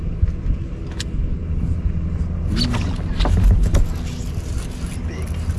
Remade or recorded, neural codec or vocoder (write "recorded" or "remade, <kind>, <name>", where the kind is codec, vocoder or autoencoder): recorded